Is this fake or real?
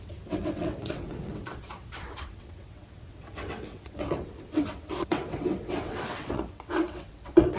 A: fake